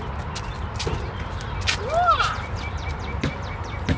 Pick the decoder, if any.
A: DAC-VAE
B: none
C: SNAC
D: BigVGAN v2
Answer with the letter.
B